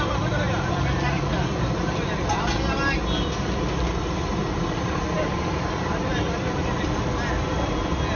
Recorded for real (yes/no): yes